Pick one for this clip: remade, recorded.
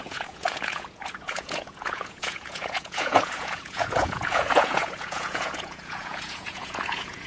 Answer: remade